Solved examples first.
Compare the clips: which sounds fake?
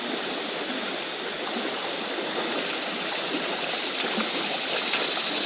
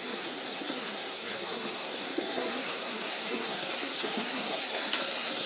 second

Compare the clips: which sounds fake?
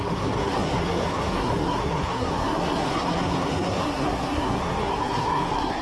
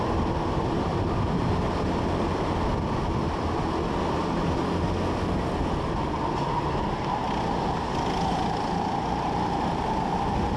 first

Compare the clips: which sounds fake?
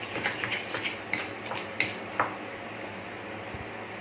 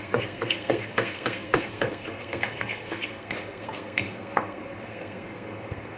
second